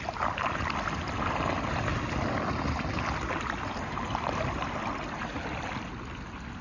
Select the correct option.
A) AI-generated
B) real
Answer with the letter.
B